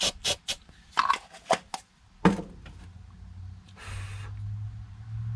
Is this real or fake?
real